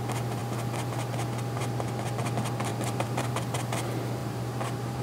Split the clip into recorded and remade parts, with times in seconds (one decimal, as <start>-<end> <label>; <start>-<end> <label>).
0.0-2.7 recorded; 2.7-3.3 remade; 3.3-4.2 recorded; 4.2-5.0 remade